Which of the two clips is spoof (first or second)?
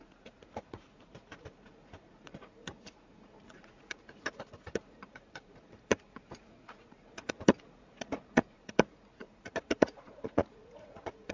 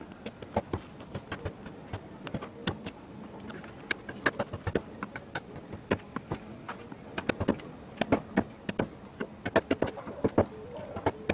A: first